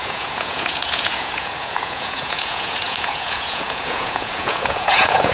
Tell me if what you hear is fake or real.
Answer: fake